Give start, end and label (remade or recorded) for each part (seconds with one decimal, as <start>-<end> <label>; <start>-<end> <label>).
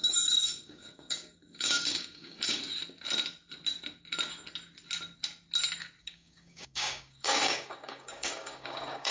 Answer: 0.0-2.6 remade; 2.6-6.0 recorded; 6.0-9.1 remade